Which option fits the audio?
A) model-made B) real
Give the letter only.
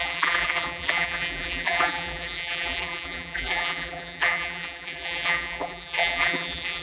A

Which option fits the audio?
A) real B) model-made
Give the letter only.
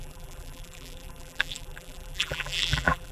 B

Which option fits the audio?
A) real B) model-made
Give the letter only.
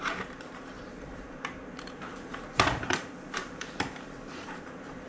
B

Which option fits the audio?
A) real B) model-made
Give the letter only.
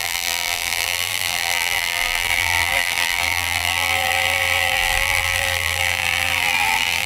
B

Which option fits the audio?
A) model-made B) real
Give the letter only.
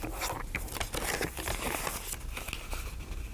B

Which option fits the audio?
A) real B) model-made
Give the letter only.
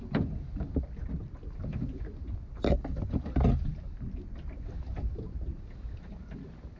A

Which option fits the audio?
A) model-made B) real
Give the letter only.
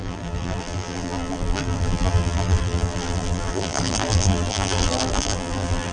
A